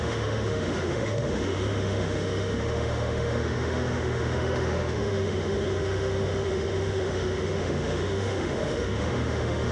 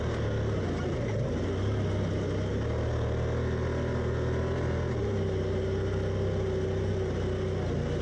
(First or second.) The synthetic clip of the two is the first